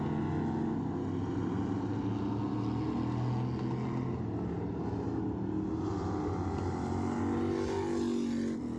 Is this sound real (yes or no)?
yes